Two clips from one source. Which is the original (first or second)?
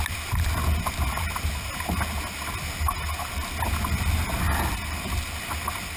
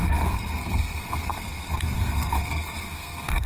first